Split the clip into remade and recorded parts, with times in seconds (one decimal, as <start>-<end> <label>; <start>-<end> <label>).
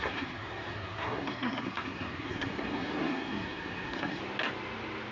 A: 0.0-4.2 remade; 4.2-5.1 recorded